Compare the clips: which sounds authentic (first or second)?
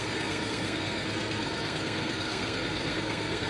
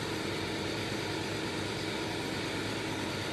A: second